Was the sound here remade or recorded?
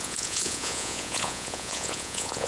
remade